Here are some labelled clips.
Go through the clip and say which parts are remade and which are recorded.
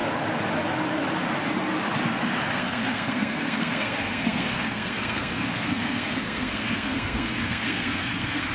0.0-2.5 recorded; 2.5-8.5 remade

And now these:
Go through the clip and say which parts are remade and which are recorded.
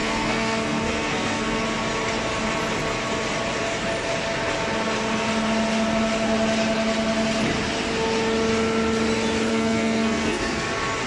0.0-1.6 remade; 1.6-9.5 recorded; 9.5-10.7 remade; 10.7-11.1 recorded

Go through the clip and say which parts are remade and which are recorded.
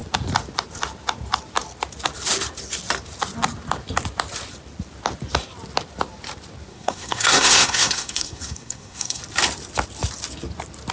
0.0-6.7 recorded; 6.7-9.2 remade; 9.2-10.9 recorded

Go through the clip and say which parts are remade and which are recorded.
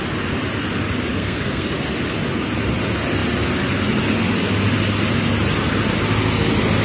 0.0-1.1 recorded; 1.1-1.7 remade; 1.7-6.8 recorded